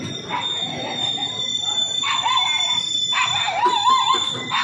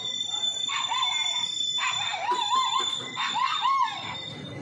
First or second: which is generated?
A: second